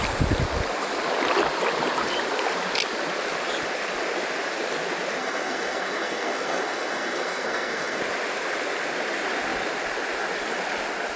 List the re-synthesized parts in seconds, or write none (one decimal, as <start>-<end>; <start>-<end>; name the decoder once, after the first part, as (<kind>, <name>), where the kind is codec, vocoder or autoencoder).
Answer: 5.2-8.0 (codec, SNAC)